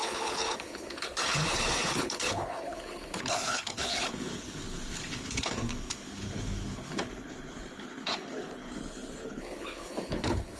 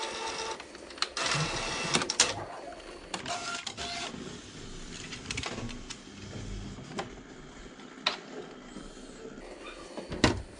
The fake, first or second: first